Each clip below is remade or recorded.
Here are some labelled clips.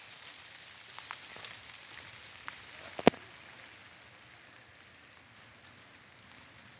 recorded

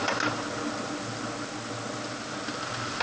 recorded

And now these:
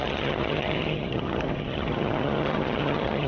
remade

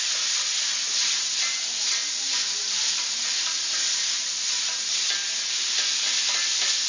recorded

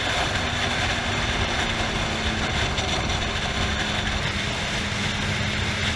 recorded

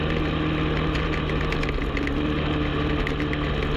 recorded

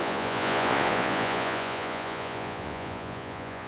remade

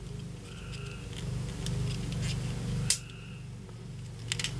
recorded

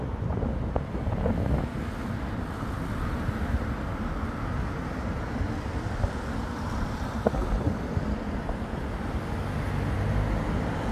recorded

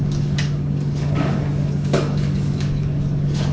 remade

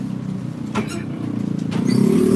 recorded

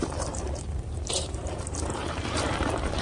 remade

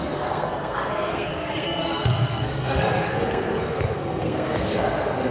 remade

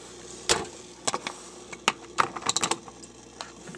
recorded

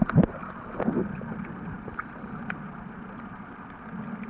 recorded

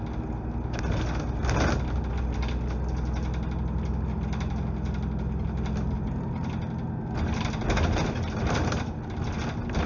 recorded